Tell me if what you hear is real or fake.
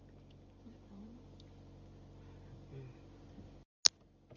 real